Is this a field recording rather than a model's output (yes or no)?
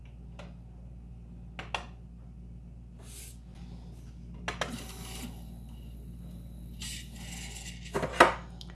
yes